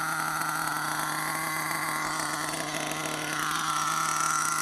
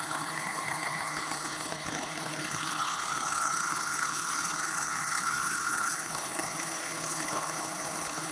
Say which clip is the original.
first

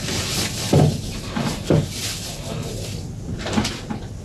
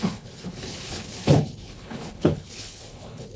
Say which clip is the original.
first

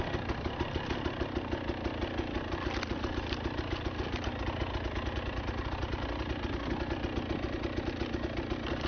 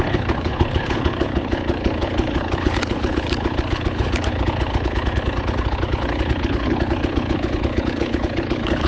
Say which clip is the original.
first